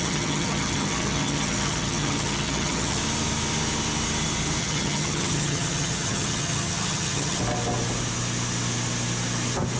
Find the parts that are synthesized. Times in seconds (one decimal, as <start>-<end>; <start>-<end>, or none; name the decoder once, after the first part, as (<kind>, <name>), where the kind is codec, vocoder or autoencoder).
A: 0.0-3.0 (vocoder, HiFi-GAN); 4.6-7.4